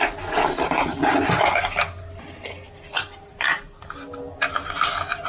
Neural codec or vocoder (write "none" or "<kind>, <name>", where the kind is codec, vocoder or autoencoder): none